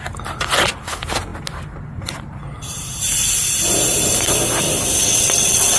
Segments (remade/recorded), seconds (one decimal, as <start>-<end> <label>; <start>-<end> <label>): 0.0-5.0 recorded; 5.0-5.8 remade